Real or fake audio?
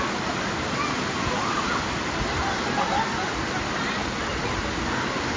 real